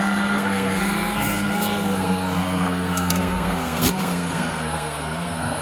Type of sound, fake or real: fake